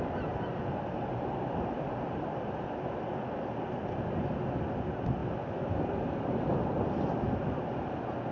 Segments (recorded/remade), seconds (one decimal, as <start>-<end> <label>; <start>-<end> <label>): 0.0-1.1 recorded; 1.1-1.7 remade; 1.7-8.3 recorded